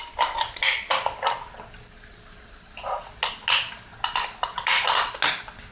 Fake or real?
real